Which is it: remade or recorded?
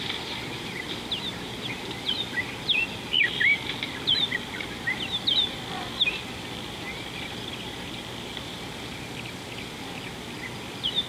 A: recorded